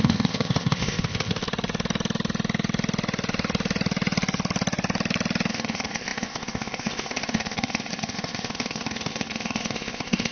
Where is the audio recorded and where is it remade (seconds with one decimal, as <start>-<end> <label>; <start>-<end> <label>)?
0.0-1.4 remade; 1.4-5.5 recorded; 5.5-10.3 remade